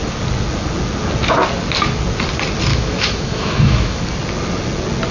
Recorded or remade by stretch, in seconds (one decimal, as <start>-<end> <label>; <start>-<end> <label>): 0.0-2.7 recorded; 2.7-4.0 remade; 4.0-5.1 recorded